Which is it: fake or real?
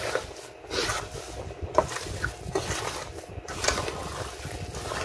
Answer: real